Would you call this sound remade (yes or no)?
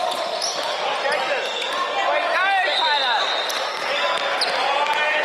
no